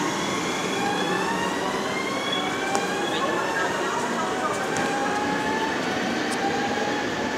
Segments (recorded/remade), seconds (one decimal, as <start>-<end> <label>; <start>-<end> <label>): 0.0-7.4 recorded